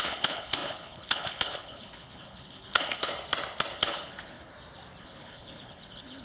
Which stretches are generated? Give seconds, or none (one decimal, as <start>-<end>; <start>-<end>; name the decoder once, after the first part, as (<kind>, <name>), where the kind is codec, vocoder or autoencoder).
0.0-3.1 (codec, HILCodec); 3.7-4.5; 5.0-6.2